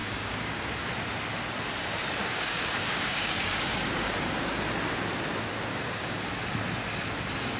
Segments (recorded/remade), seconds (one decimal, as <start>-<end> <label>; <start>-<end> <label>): 0.0-0.9 remade; 0.9-2.2 recorded; 2.2-4.5 remade; 4.5-5.7 recorded; 5.7-6.2 remade; 6.2-7.6 recorded